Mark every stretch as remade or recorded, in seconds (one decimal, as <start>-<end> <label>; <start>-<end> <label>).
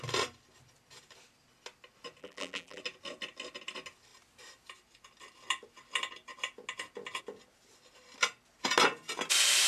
0.0-2.2 recorded; 2.2-2.8 remade; 2.8-9.7 recorded